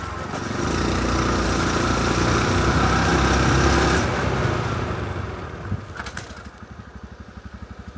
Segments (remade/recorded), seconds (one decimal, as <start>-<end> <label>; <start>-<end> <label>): 0.0-8.0 recorded